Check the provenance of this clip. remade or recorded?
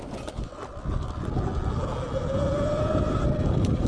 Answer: recorded